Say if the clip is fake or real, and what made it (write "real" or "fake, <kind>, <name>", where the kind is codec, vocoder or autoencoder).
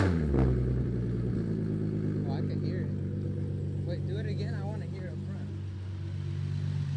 real